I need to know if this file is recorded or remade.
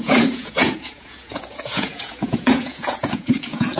remade